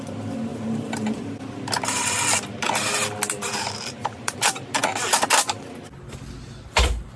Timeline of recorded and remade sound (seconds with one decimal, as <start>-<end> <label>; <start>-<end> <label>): 0.0-0.5 recorded; 0.5-1.2 remade; 1.2-7.2 recorded

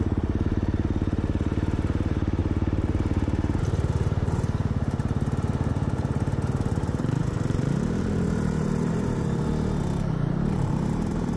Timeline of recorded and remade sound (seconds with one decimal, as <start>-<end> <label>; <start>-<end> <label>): 0.0-9.5 remade; 9.5-10.1 recorded; 10.1-11.4 remade